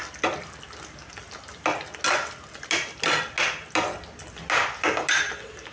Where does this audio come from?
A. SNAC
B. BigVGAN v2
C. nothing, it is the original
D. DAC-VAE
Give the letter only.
C